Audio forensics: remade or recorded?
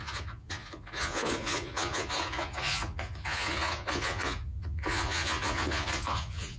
remade